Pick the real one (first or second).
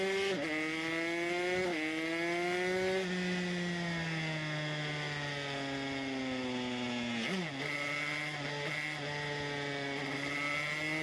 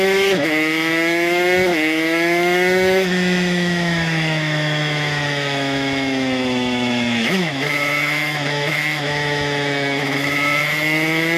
first